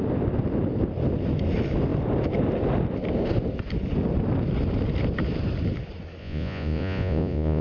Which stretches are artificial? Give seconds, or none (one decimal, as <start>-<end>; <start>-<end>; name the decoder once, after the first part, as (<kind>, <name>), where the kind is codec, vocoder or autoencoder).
6.2-7.6 (vocoder, Vocos)